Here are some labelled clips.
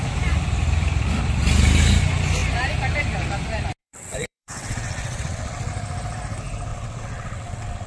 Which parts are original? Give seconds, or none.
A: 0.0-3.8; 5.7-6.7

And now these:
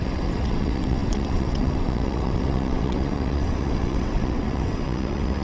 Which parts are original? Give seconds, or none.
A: none